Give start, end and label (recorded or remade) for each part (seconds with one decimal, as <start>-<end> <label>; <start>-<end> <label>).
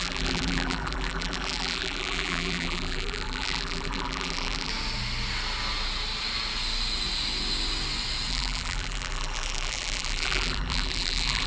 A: 0.0-4.7 remade; 4.7-8.3 recorded; 8.3-11.5 remade